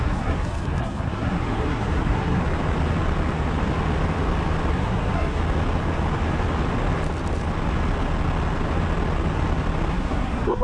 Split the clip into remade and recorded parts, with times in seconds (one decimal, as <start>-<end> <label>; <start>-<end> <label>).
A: 0.0-2.4 remade; 2.4-4.7 recorded; 4.7-5.4 remade; 5.4-9.9 recorded; 9.9-10.6 remade